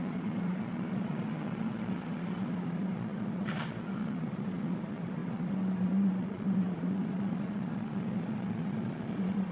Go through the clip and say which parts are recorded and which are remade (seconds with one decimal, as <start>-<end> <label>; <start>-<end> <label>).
0.0-9.5 remade